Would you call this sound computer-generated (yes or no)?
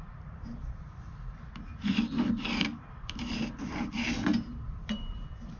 yes